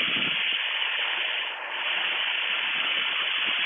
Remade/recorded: recorded